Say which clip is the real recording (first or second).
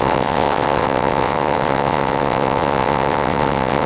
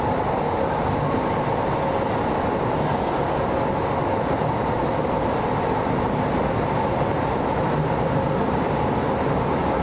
second